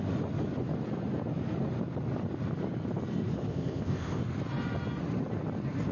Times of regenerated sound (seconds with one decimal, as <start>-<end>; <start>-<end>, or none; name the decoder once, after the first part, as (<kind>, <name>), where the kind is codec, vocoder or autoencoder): 3.5-4.2 (codec, ZipCodec)